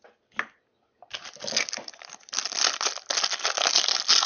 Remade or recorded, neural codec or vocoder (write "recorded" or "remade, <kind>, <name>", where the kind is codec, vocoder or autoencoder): recorded